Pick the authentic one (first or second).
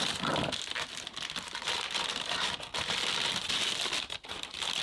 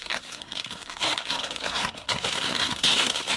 first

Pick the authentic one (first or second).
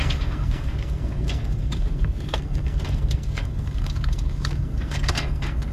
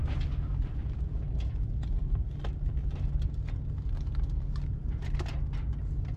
second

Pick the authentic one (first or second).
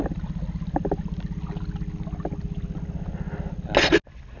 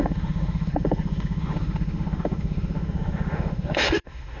first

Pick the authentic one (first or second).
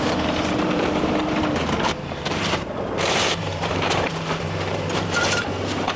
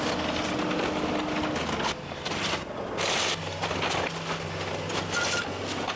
second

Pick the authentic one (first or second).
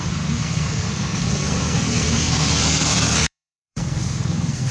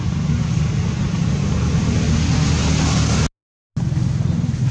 second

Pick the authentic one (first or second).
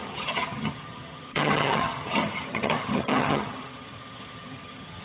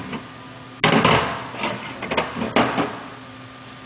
second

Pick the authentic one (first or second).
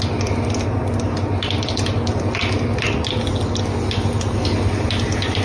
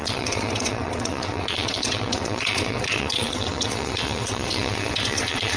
first